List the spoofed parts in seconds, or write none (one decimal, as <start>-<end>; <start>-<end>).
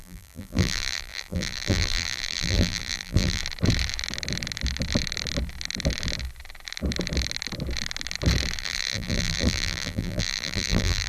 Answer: 0.0-3.4; 8.6-11.1